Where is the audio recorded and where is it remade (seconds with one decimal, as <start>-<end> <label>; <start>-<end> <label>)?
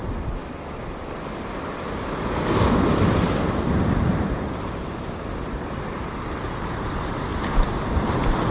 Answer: 0.0-8.5 recorded